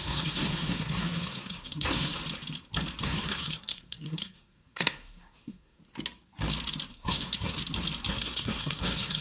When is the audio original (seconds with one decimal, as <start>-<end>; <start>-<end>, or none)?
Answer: 2.2-3.0; 5.8-6.9; 7.6-8.1